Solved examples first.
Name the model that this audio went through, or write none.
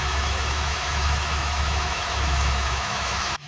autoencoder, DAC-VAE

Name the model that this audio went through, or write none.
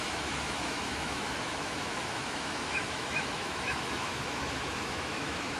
autoencoder, DAC-VAE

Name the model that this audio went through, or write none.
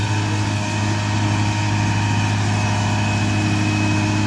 none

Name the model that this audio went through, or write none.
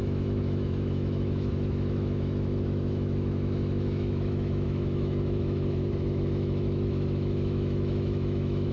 autoencoder, DAC-VAE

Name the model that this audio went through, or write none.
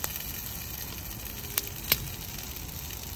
none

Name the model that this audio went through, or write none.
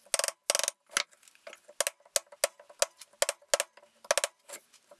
none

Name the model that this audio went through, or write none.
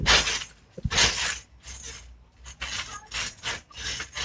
none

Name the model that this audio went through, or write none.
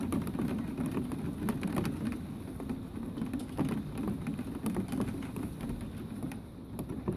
none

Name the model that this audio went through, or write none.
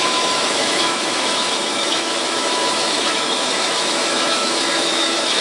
autoencoder, DAC-VAE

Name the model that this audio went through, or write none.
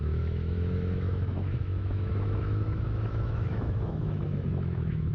autoencoder, DAC-VAE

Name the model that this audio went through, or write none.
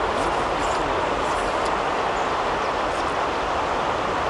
none